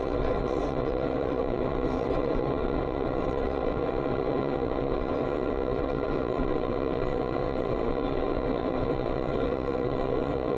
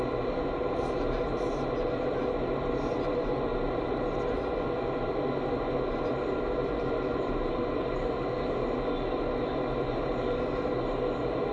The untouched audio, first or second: second